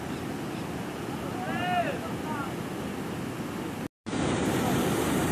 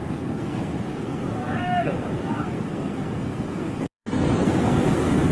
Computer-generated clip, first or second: second